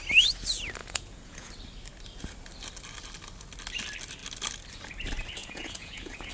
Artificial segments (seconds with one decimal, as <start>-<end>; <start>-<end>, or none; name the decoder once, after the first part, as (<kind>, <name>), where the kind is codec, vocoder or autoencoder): 0.8-1.5 (vocoder, Vocos); 5.4-6.3